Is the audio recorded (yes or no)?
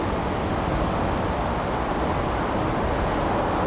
yes